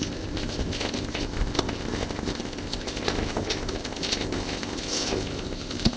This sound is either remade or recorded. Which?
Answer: remade